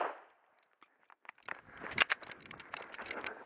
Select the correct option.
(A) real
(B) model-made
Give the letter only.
A